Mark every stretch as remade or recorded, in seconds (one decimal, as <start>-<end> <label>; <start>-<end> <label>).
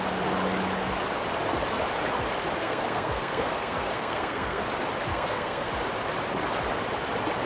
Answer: 0.0-2.6 recorded; 2.6-4.6 remade; 4.6-5.1 recorded; 5.1-5.7 remade; 5.7-7.5 recorded